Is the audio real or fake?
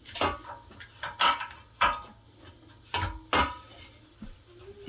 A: real